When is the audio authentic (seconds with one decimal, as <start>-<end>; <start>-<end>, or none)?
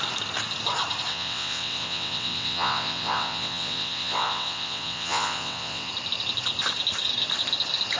0.0-1.1; 5.9-8.0